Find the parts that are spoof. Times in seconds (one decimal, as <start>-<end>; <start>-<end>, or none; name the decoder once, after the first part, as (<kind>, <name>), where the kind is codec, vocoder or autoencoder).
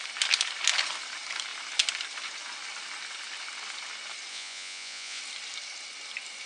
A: 4.3-5.2 (vocoder, Vocos)